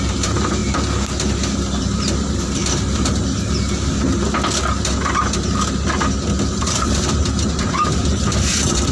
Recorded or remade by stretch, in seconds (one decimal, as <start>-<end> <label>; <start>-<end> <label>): 0.0-0.6 remade; 0.6-1.8 recorded; 1.8-2.6 remade; 2.6-6.6 recorded; 6.6-8.9 remade